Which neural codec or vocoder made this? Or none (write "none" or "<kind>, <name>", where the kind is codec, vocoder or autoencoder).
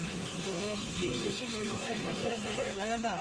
codec, SNAC